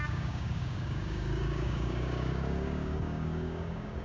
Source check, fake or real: fake